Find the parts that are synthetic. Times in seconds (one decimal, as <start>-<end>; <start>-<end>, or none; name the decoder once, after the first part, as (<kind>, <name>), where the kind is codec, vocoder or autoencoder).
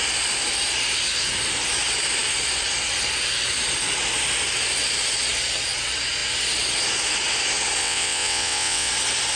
7.8-8.9 (vocoder, WaveNeXt)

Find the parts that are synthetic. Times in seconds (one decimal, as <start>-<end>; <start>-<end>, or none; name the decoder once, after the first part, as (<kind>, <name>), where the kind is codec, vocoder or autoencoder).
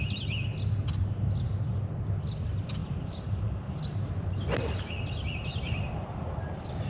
2.8-4.1 (vocoder, BigVGAN v2)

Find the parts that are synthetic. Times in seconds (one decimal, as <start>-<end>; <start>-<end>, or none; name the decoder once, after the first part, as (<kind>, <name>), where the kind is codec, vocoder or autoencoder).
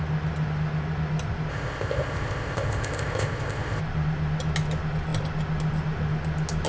1.5-3.8 (codec, ZipCodec)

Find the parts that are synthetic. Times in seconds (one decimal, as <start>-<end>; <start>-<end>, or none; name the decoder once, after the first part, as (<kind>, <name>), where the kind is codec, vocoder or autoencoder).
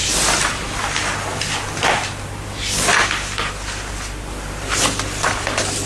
none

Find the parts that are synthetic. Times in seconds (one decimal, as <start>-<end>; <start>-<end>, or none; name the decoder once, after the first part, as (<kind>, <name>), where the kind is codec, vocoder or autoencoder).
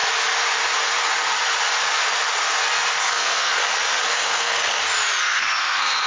3.0-3.6 (codec, SNAC); 4.1-4.6; 5.2-6.1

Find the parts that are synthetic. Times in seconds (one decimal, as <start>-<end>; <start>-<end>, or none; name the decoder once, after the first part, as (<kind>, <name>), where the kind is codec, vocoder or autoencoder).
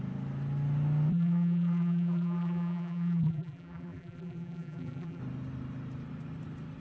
1.1-5.2 (vocoder, BigVGAN v2)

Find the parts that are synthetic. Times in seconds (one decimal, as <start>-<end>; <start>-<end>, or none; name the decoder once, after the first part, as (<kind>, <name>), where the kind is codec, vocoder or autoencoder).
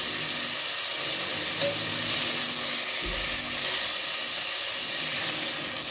none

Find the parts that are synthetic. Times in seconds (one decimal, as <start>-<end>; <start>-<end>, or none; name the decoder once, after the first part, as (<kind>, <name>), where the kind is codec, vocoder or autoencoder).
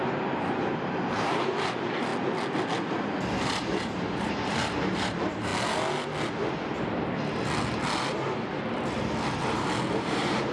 0.0-2.1 (vocoder, BigVGAN v2); 3.4-5.5; 10.0-10.5